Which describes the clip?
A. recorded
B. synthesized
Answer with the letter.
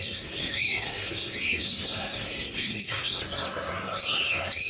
B